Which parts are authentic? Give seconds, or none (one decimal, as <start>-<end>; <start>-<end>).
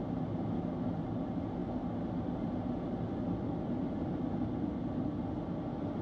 0.0-6.0